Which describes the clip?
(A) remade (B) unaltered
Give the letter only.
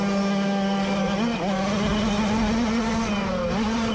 B